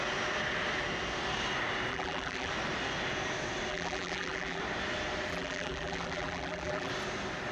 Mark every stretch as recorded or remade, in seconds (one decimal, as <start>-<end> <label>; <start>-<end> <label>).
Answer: 0.0-1.9 recorded; 1.9-2.5 remade; 2.5-3.7 recorded; 3.7-4.6 remade; 4.6-5.3 recorded; 5.3-6.9 remade; 6.9-7.5 recorded